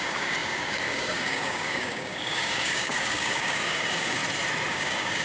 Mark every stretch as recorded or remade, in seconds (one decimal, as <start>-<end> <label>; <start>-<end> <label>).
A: 0.0-4.2 remade; 4.2-4.7 recorded; 4.7-5.2 remade